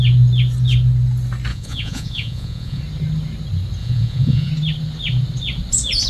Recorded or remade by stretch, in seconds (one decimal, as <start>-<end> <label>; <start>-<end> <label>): 0.0-1.5 recorded; 1.5-2.8 remade; 2.8-3.8 recorded; 3.8-4.5 remade; 4.5-6.1 recorded